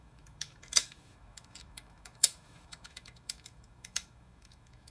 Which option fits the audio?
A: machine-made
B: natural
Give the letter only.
A